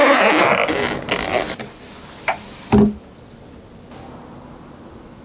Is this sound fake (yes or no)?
no